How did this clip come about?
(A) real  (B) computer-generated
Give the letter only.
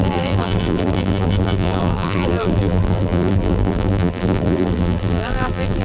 B